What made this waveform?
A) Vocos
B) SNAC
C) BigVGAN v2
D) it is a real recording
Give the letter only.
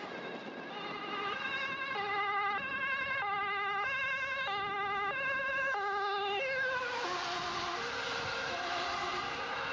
D